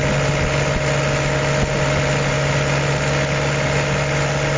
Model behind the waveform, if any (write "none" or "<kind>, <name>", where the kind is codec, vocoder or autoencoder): none